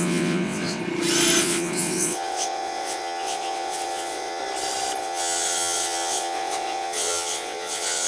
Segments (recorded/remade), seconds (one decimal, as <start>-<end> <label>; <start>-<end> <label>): 0.0-0.8 remade; 0.8-1.4 recorded; 1.4-4.4 remade; 4.4-5.0 recorded; 5.0-8.1 remade